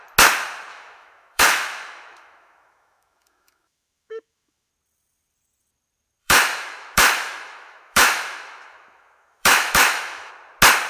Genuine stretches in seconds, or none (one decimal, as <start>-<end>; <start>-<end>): 0.0-0.7; 4.7-6.2; 10.3-10.9